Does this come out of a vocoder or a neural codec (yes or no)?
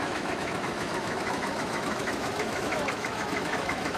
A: yes